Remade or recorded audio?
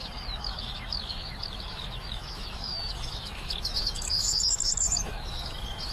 remade